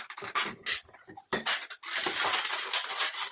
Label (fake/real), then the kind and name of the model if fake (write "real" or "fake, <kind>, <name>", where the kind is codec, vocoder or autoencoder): real